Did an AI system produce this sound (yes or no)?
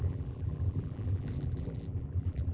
yes